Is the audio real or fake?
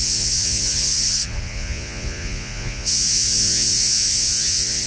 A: fake